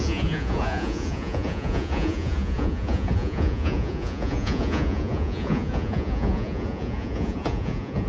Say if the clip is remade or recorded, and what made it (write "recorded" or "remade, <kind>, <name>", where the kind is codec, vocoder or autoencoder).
remade, vocoder, Vocos